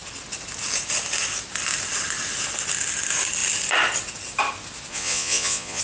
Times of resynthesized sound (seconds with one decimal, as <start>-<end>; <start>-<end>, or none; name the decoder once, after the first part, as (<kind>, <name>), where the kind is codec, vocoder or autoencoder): 4.9-5.8 (vocoder, Vocos)